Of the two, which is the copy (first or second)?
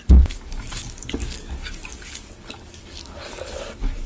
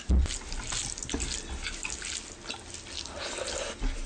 first